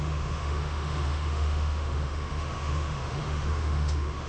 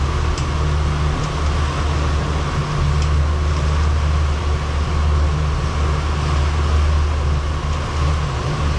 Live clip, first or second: second